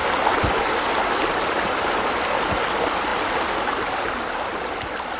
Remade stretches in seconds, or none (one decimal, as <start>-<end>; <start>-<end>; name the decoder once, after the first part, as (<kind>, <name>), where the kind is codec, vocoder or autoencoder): none